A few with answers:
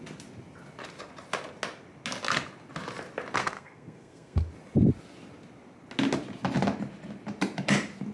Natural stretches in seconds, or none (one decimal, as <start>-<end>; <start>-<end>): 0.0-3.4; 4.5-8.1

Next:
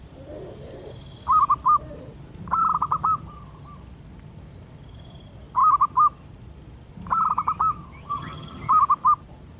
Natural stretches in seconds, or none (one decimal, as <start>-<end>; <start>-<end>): 0.0-8.1; 8.7-9.6

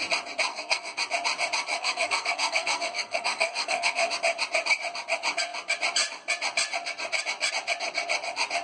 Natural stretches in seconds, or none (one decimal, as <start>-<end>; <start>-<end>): 0.0-0.5; 1.0-1.7; 4.1-8.6

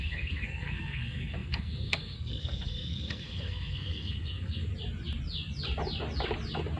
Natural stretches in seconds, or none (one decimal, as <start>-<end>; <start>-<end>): 4.7-6.8

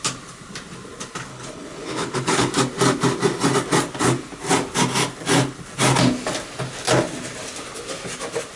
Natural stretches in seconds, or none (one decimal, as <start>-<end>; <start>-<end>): 0.0-1.3; 2.5-8.6

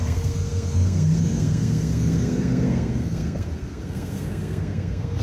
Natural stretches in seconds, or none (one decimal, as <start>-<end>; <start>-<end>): none

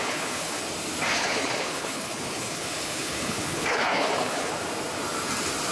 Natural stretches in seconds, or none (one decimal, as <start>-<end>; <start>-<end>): 0.6-1.1; 4.5-5.7

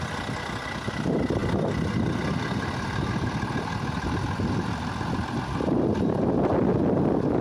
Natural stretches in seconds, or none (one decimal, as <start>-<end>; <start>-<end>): 0.0-7.4